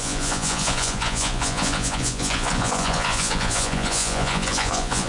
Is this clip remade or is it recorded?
remade